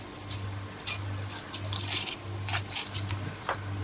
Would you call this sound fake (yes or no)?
no